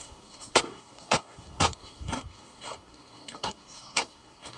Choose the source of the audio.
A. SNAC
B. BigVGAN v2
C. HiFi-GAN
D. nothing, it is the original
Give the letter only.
A